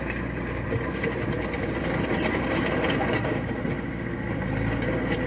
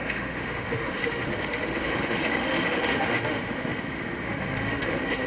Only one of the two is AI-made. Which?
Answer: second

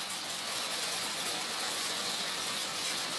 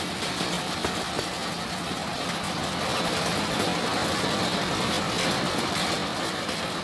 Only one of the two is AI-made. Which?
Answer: first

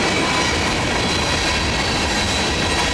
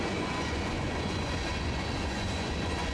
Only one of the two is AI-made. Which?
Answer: second